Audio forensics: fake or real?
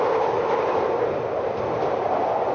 real